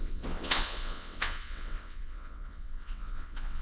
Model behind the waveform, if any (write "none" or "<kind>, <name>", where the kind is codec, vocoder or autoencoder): vocoder, WaveNeXt